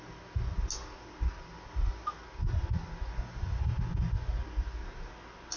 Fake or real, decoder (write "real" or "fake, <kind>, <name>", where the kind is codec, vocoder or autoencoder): real